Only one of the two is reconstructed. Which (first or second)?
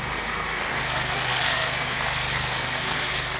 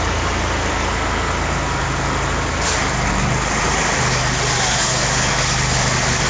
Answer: first